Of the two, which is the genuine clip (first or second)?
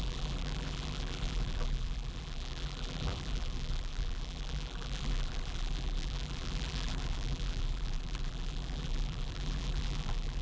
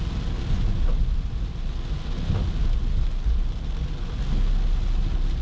second